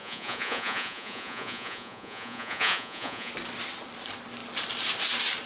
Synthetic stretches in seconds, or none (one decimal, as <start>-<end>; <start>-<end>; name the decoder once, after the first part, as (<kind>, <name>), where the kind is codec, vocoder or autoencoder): 0.0-3.3 (vocoder, Vocos)